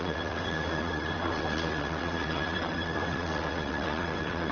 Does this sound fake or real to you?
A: fake